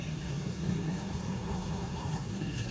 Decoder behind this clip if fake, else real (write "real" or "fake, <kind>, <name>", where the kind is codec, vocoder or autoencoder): fake, codec, SNAC